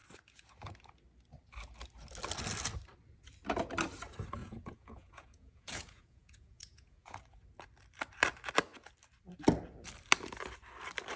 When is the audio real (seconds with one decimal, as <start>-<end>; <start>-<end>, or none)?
0.0-4.4; 7.2-11.2